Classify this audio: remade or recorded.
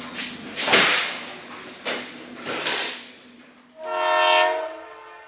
recorded